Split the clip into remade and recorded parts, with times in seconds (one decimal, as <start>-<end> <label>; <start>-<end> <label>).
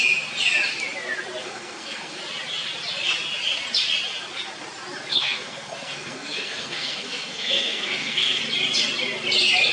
0.0-1.4 recorded; 1.4-2.2 remade; 2.2-5.1 recorded; 5.1-8.4 remade; 8.4-9.7 recorded